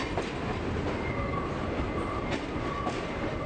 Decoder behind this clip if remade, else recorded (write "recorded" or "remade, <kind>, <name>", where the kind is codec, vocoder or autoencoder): recorded